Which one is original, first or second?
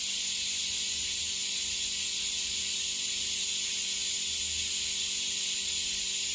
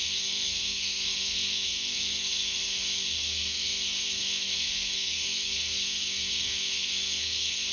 first